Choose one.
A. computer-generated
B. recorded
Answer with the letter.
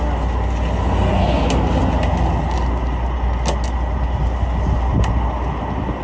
B